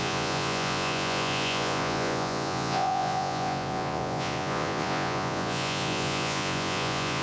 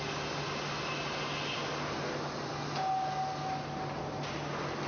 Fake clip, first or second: first